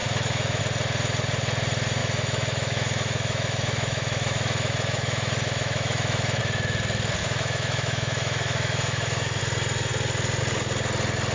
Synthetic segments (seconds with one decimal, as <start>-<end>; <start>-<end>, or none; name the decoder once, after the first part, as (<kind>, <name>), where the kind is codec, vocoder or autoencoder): 0.0-0.6 (autoencoder, DAC-VAE); 2.0-6.4; 7.2-9.4